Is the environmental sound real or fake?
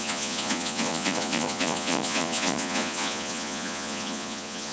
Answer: fake